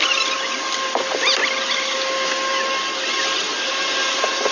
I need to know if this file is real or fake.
real